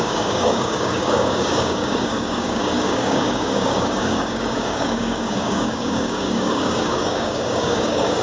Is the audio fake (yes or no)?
yes